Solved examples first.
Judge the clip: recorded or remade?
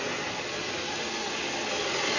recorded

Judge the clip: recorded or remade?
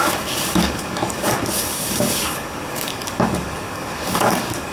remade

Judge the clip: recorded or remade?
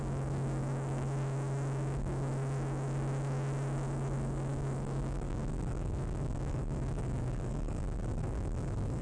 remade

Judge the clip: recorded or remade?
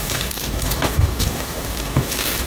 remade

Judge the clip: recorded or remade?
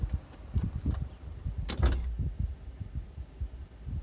recorded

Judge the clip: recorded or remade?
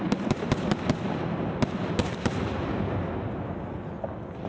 recorded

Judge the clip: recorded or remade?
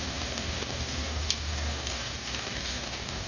remade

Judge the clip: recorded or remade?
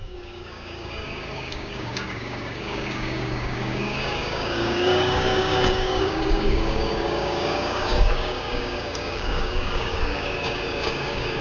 remade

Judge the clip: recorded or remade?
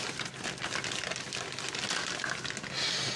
recorded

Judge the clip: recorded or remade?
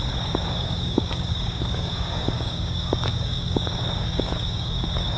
remade